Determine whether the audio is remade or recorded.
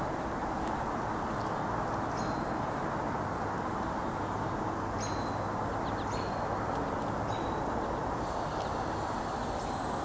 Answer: recorded